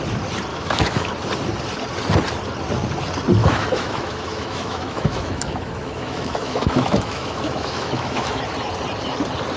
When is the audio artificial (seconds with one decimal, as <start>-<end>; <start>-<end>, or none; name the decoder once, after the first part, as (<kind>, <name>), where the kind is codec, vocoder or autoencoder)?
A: 0.5-1.1 (autoencoder, DAC-VAE); 3.4-8.4